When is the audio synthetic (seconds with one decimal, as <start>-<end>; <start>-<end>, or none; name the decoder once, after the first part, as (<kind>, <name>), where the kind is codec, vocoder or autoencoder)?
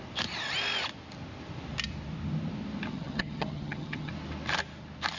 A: 2.9-4.1 (vocoder, HiFi-GAN)